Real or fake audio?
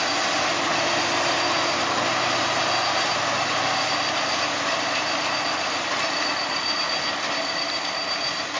real